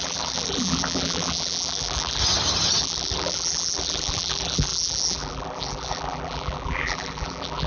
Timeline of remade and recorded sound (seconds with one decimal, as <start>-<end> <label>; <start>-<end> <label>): 0.0-2.2 remade; 2.2-2.8 recorded; 2.8-7.7 remade